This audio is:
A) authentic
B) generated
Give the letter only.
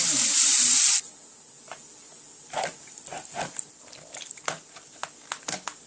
A